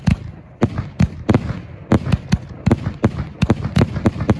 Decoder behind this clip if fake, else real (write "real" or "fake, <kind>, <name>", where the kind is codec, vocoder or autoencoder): real